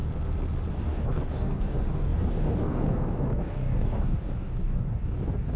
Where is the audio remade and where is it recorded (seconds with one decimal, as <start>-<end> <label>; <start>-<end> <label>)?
0.0-0.7 recorded; 0.7-5.6 remade

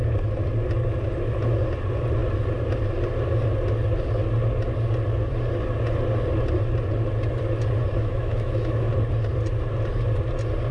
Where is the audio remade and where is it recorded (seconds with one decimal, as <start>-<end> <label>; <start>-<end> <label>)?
0.0-8.0 recorded; 8.0-8.9 remade; 8.9-10.7 recorded

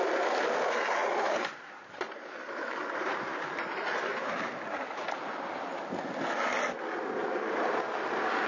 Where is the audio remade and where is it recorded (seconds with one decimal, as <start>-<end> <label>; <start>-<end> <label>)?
0.0-1.0 recorded; 1.0-5.8 remade; 5.8-7.2 recorded; 7.2-7.7 remade; 7.7-8.5 recorded

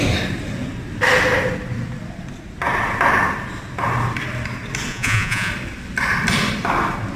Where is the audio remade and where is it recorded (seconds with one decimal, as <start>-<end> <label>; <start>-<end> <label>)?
0.0-4.9 recorded; 4.9-5.5 remade; 5.5-7.2 recorded